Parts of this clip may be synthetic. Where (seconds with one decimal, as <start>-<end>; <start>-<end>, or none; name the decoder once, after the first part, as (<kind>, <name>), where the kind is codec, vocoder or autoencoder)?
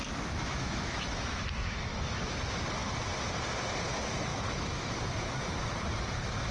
0.0-2.3 (autoencoder, DAC-VAE); 4.3-4.9